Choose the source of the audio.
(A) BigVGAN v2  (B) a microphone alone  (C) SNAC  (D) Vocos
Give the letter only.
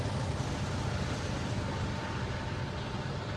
B